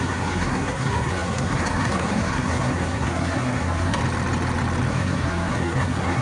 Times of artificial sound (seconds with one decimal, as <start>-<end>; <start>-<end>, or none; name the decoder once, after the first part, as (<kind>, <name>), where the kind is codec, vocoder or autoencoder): 0.0-4.0 (codec, SNAC); 4.9-6.2